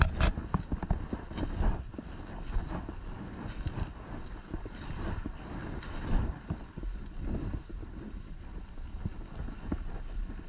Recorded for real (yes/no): yes